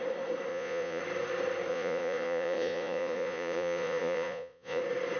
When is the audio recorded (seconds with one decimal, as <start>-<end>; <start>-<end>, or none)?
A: 0.0-0.5; 1.0-1.7; 4.8-5.2